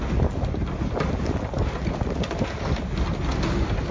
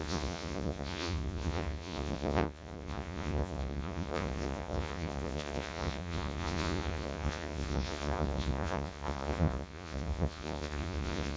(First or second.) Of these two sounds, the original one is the first